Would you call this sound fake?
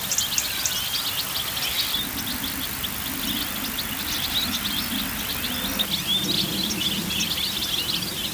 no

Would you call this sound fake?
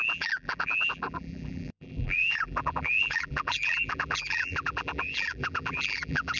yes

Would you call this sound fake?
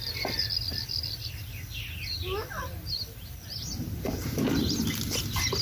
no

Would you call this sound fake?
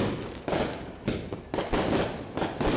no